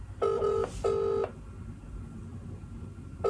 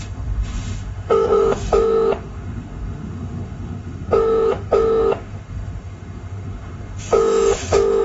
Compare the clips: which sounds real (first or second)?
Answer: first